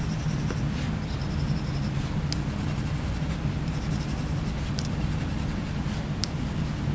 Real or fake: real